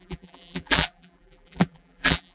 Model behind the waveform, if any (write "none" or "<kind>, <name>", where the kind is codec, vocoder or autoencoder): vocoder, BigVGAN v2